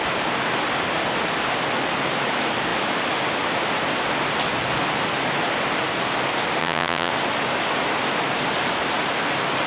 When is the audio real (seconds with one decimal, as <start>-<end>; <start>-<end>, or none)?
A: 0.0-6.6; 7.1-9.7